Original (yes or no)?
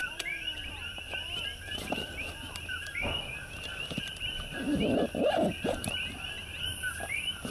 no